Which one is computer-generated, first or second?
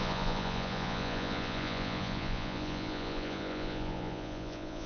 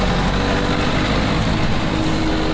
first